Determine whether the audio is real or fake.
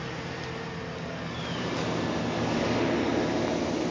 real